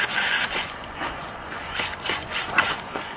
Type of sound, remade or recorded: remade